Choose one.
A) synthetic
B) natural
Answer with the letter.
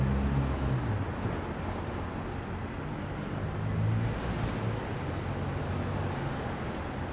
B